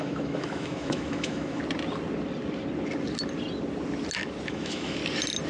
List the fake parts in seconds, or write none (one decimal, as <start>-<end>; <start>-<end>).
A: 0.0-1.6; 4.5-5.0